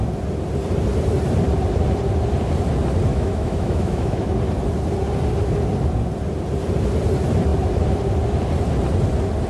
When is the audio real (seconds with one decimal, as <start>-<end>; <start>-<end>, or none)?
0.0-3.1; 4.3-9.5